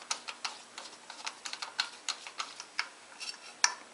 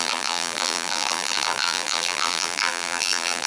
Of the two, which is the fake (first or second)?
second